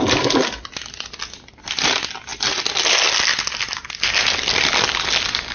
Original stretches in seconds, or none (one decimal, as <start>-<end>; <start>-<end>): 0.0-5.5